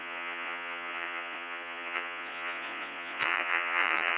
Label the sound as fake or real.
fake